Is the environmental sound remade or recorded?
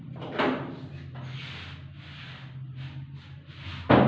recorded